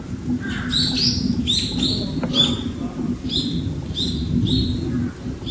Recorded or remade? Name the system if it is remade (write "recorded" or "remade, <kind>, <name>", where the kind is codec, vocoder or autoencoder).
recorded